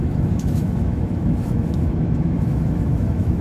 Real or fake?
fake